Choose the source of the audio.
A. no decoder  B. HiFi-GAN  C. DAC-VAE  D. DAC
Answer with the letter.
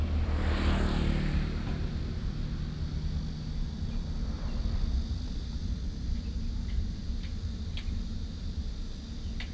A